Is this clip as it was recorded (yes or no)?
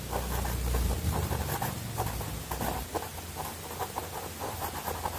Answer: yes